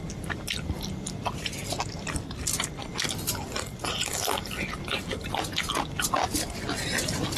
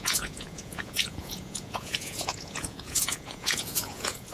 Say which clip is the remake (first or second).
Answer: second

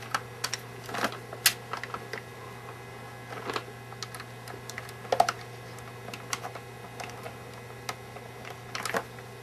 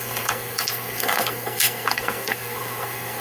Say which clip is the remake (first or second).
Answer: second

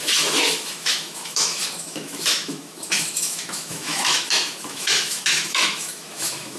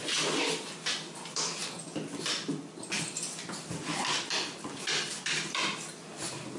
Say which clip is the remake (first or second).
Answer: first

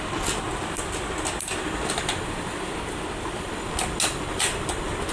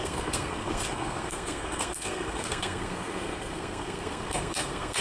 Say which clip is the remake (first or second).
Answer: second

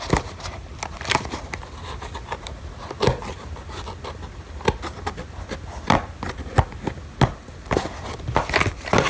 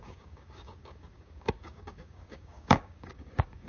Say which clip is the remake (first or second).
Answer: second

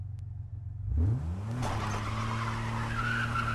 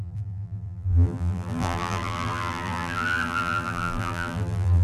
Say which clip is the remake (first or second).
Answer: second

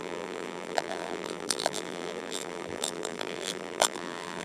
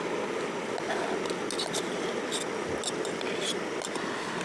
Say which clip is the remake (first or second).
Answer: first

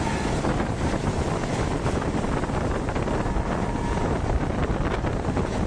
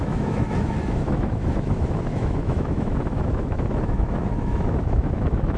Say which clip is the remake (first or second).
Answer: second